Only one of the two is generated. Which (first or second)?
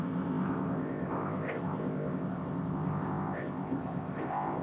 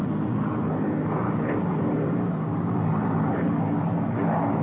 first